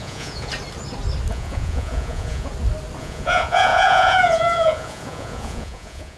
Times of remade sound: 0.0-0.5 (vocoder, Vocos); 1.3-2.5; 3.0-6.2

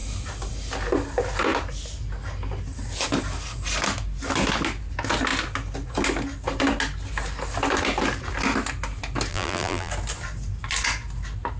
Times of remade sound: 9.3-9.9 (vocoder, BigVGAN v2)

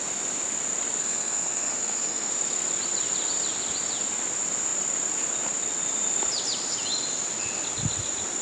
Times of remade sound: 1.0-2.3 (codec, SNAC)